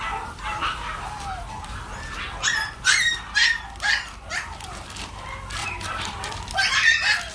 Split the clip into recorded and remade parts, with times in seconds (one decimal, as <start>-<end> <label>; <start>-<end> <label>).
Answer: 0.0-5.6 recorded; 5.6-6.3 remade; 6.3-7.3 recorded